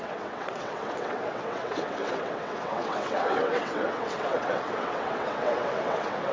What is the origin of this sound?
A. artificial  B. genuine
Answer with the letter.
A